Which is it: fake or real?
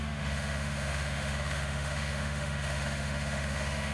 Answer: fake